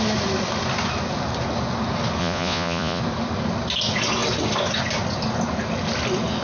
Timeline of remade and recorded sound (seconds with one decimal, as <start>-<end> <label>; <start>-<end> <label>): 0.0-2.2 recorded; 2.2-3.0 remade; 3.0-6.4 recorded